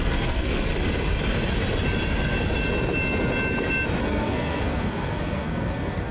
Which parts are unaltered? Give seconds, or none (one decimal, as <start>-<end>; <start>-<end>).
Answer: 0.7-4.0